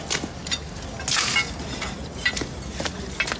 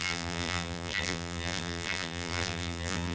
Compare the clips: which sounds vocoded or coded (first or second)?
second